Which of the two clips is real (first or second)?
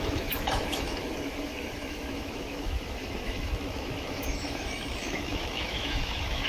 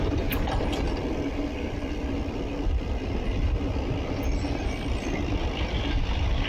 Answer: second